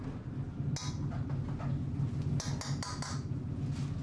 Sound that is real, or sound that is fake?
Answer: real